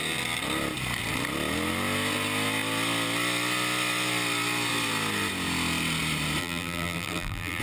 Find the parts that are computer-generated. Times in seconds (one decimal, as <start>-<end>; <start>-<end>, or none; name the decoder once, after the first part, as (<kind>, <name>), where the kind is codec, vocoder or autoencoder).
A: 6.4-7.6 (vocoder, BigVGAN v2)